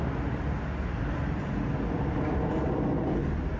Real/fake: real